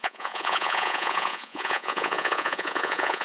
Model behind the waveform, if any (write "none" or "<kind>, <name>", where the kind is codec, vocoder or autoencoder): vocoder, Vocos